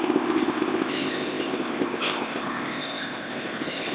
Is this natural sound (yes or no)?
no